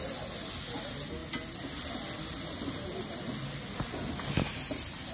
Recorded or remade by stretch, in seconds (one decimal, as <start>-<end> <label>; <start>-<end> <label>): 0.0-5.1 recorded